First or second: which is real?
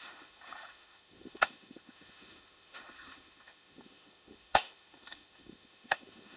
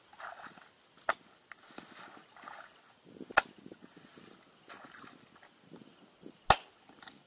second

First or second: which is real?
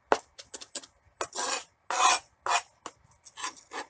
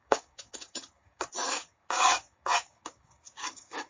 first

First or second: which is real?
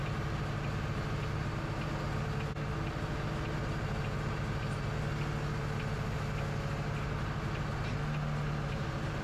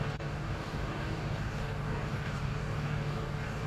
first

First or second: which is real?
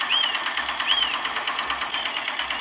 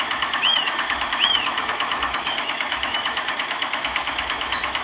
first